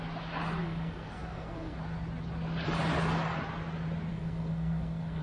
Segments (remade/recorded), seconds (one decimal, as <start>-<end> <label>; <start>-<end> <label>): 0.0-0.6 recorded; 0.6-1.8 remade; 1.8-4.1 recorded; 4.1-5.2 remade